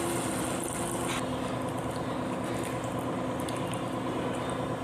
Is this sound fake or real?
real